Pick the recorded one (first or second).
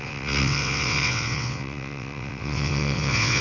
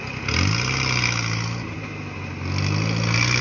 second